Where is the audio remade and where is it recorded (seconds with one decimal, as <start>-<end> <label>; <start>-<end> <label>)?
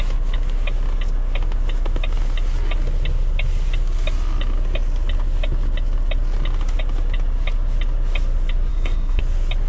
0.0-8.7 recorded; 8.7-9.2 remade; 9.2-9.7 recorded